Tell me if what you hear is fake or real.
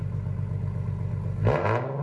real